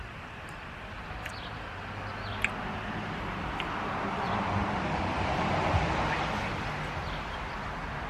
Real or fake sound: real